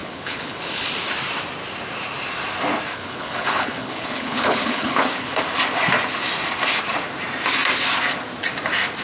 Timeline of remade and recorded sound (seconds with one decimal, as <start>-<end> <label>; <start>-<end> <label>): 0.0-0.9 remade; 0.9-2.9 recorded; 2.9-5.4 remade; 5.4-9.0 recorded